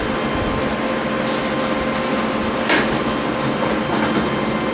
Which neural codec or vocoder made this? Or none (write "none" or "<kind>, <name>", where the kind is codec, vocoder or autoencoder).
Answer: none